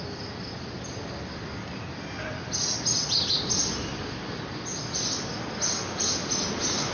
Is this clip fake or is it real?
real